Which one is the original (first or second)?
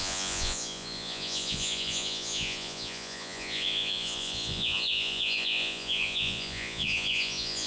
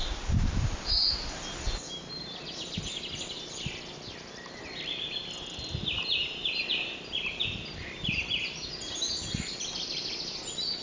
second